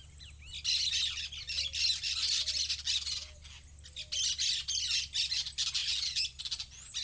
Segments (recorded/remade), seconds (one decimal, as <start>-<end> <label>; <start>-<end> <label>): 0.0-7.0 recorded